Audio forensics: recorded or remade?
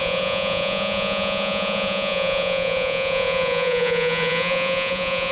remade